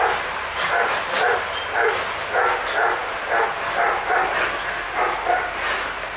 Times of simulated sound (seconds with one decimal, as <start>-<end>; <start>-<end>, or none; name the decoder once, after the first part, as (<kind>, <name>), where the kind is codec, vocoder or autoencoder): none

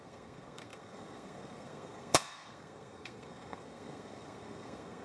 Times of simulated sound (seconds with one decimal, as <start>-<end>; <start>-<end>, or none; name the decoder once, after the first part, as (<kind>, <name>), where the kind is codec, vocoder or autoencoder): 0.0-5.0 (codec, SNAC)

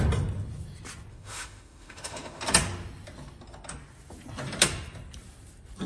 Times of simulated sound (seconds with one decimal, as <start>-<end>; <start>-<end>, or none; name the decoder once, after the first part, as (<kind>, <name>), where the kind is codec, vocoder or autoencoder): 1.1-2.4 (autoencoder, DAC-VAE)